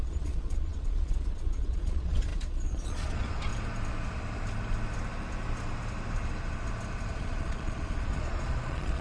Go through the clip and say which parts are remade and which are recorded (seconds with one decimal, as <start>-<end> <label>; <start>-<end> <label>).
0.0-3.5 remade; 3.5-7.1 recorded; 7.1-9.0 remade